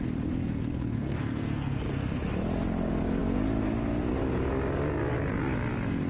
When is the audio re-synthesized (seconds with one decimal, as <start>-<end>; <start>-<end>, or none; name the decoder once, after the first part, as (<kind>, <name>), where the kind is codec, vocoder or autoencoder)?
0.4-2.2 (codec, SNAC)